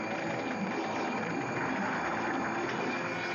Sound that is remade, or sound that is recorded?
recorded